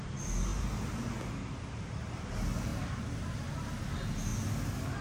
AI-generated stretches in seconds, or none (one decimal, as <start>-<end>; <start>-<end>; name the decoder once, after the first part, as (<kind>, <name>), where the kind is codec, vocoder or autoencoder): none